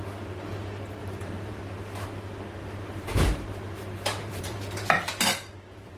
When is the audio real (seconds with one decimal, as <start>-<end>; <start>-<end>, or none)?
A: 0.0-1.0; 1.6-2.6